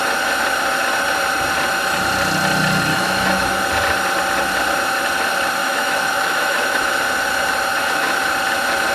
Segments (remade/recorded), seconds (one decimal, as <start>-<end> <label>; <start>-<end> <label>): 0.0-2.9 recorded; 2.9-3.6 remade; 3.6-5.6 recorded; 5.6-6.9 remade; 6.9-7.7 recorded; 7.7-8.2 remade; 8.2-8.9 recorded